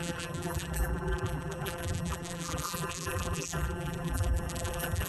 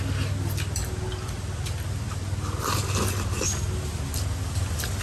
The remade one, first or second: first